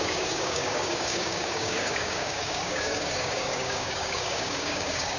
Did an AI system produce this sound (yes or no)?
yes